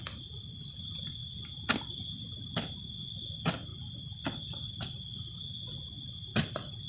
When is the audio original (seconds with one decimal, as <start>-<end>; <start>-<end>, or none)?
0.0-6.9